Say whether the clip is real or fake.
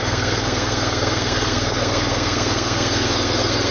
fake